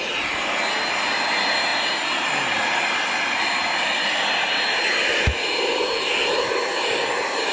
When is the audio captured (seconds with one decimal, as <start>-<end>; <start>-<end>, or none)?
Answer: 0.0-7.5